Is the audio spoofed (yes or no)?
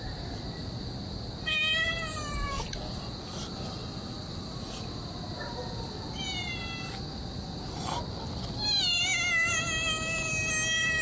no